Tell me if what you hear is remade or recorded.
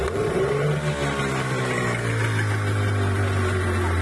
recorded